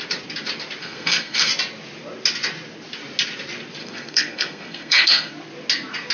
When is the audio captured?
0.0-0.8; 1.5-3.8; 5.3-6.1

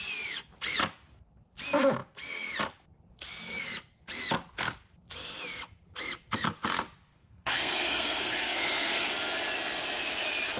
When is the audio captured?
0.0-7.1; 9.1-10.6